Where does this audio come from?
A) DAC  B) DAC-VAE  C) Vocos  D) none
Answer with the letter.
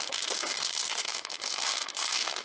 B